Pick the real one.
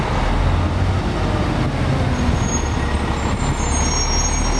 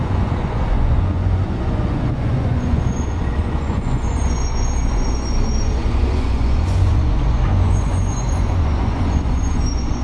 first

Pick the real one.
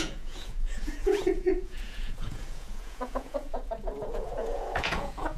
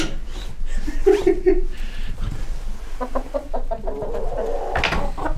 second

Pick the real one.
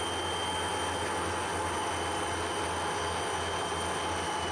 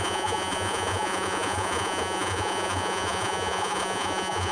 first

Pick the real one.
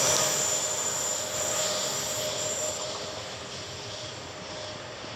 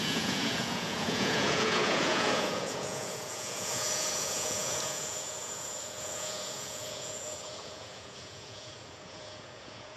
first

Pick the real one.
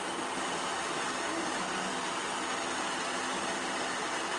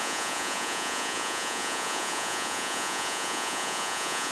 first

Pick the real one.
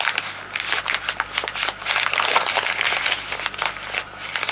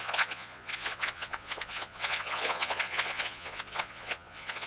first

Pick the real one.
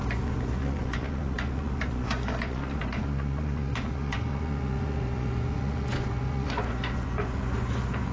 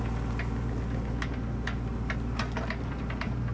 second